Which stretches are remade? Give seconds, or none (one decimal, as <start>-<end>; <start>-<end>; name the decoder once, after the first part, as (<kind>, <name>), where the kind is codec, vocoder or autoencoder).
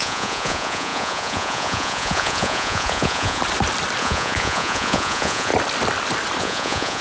0.0-3.4 (vocoder, Vocos); 4.0-5.5; 6.4-7.0